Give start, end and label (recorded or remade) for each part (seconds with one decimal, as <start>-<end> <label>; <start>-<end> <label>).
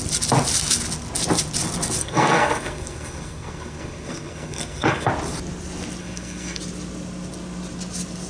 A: 0.0-2.0 recorded; 2.0-5.1 remade; 5.1-6.0 recorded; 6.0-6.6 remade; 6.6-8.3 recorded